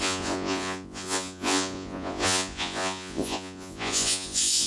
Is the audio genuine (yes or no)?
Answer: no